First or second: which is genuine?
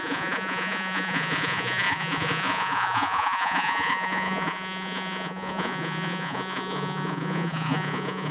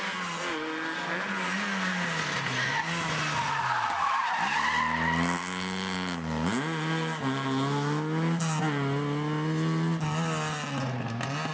second